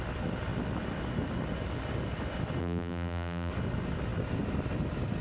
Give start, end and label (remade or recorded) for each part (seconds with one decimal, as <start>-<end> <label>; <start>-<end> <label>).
0.0-2.6 recorded; 2.6-3.5 remade; 3.5-5.2 recorded